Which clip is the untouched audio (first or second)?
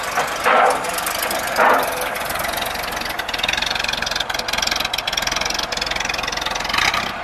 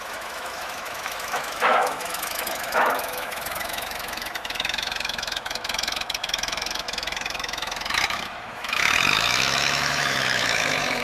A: first